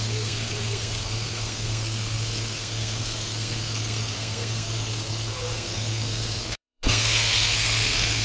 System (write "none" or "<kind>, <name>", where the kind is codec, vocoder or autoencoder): codec, SNAC